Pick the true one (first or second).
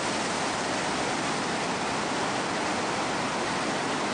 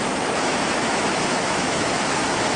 first